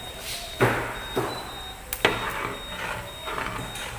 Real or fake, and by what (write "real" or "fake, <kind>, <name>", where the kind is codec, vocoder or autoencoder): real